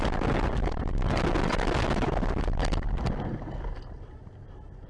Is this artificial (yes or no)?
no